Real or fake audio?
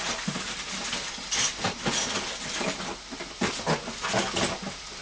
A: real